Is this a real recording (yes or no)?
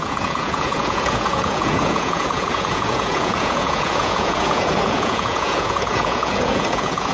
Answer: no